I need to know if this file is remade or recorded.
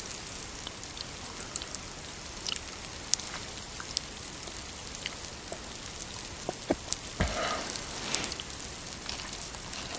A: recorded